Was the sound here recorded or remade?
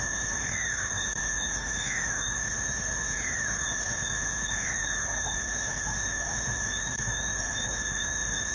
remade